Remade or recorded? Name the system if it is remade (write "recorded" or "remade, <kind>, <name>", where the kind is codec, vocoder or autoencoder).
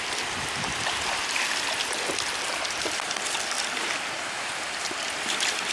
recorded